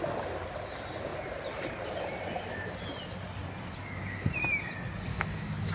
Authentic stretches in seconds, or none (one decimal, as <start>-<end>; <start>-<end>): 0.0-5.1